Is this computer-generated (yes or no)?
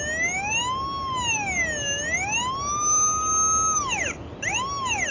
no